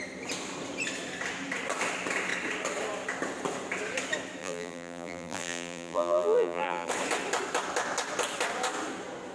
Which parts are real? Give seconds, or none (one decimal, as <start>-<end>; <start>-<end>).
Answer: 0.0-4.4; 6.9-9.3